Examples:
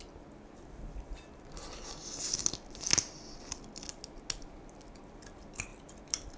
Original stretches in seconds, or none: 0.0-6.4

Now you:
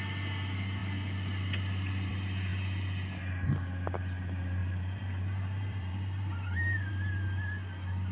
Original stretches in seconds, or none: 0.0-4.6; 6.9-8.1

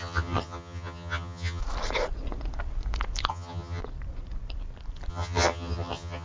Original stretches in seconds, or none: 1.6-3.3; 3.8-5.1

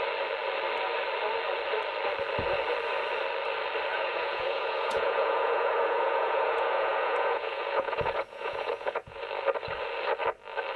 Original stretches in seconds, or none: 0.0-3.9; 9.2-10.8

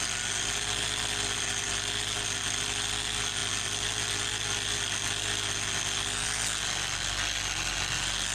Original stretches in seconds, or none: 0.0-8.3

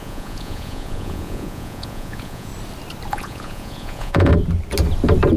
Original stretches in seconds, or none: 2.5-3.1; 4.3-5.4

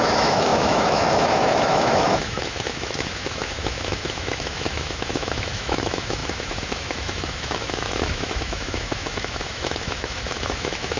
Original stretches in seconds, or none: none